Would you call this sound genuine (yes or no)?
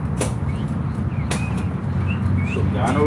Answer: yes